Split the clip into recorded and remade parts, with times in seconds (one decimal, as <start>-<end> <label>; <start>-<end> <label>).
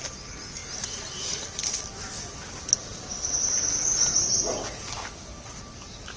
0.0-6.2 recorded